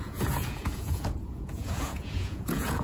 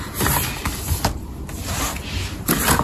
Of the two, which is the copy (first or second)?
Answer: first